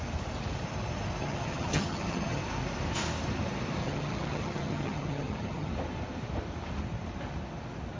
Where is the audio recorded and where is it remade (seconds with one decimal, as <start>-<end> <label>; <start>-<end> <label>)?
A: 0.0-1.2 recorded; 1.2-2.4 remade; 2.4-3.8 recorded; 3.8-5.7 remade; 5.7-8.0 recorded